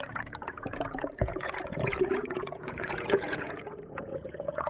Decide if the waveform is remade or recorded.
remade